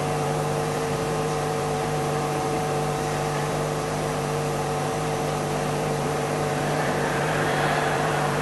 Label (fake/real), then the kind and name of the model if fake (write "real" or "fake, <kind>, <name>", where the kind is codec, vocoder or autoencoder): fake, vocoder, BigVGAN v2